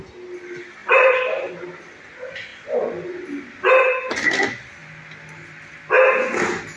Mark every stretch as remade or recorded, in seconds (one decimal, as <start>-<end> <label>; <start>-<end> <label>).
0.0-0.8 recorded; 0.8-2.0 remade; 2.0-6.8 recorded

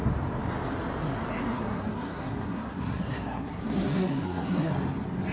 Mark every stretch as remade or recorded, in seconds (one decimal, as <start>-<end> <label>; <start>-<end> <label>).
0.0-1.5 recorded; 1.5-4.7 remade; 4.7-5.3 recorded